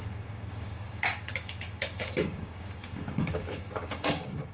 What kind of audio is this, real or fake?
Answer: fake